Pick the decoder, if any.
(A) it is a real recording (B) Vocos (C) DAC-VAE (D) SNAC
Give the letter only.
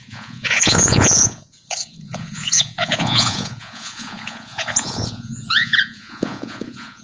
B